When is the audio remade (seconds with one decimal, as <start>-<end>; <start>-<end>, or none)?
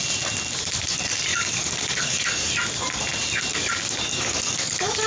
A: 1.3-2.5; 3.5-5.1